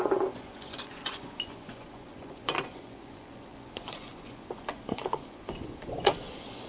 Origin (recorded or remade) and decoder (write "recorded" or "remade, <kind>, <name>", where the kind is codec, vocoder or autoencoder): remade, vocoder, Vocos